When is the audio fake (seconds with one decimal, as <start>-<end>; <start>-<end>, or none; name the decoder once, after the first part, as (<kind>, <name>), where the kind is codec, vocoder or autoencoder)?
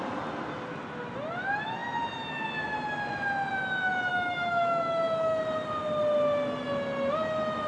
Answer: 4.1-5.4 (autoencoder, DAC-VAE)